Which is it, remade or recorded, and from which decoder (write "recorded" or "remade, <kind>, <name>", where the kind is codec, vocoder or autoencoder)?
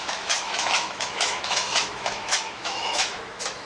remade, autoencoder, DAC-VAE